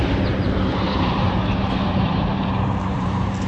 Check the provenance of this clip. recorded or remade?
remade